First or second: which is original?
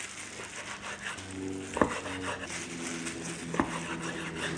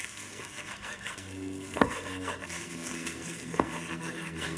first